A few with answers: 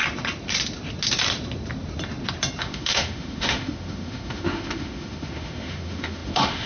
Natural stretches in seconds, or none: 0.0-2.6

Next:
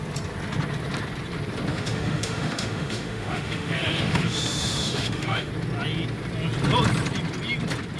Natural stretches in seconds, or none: 0.0-1.7; 5.5-8.0

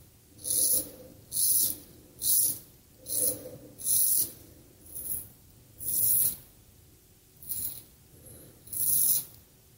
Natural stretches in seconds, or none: 0.0-9.8

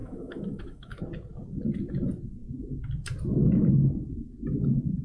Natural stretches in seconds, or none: 1.0-5.0